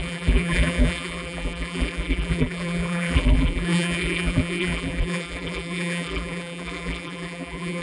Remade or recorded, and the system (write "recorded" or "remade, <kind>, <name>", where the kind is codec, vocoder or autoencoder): remade, vocoder, BigVGAN v2